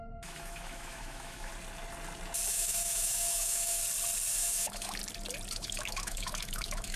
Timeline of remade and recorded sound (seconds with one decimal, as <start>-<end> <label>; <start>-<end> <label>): 0.0-1.5 remade; 1.5-2.5 recorded; 2.5-3.8 remade; 3.8-4.3 recorded; 4.3-5.0 remade; 5.0-5.5 recorded; 5.5-7.0 remade